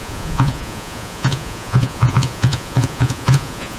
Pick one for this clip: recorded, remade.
remade